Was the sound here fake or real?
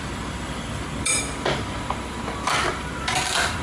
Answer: real